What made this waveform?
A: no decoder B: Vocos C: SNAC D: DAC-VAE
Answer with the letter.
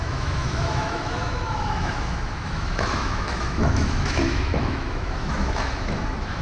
D